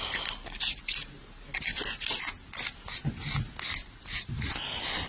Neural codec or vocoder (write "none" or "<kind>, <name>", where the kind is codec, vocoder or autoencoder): none